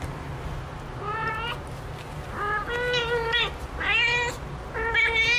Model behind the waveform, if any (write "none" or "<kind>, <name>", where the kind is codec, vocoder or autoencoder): none